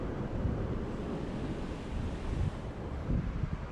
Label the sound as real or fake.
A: fake